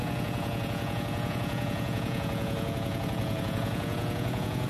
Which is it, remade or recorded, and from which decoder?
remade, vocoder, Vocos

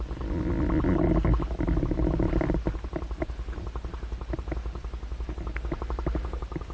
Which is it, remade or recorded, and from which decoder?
recorded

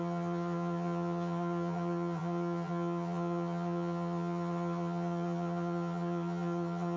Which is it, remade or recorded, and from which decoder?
remade, vocoder, HiFi-GAN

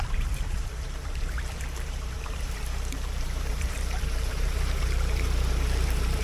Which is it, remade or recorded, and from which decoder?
remade, vocoder, BigVGAN v2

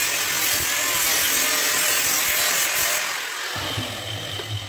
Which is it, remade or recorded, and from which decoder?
recorded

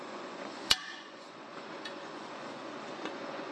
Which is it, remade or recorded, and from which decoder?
remade, vocoder, Vocos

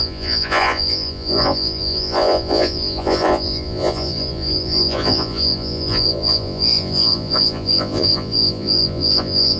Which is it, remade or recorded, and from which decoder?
remade, vocoder, Vocos